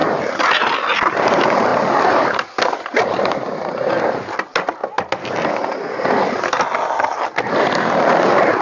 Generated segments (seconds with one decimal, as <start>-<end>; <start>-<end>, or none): none